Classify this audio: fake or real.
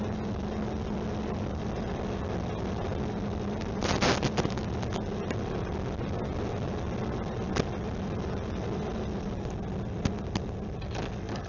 real